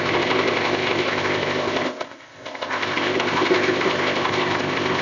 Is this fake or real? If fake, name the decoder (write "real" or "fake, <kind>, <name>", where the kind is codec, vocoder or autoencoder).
fake, codec, ZipCodec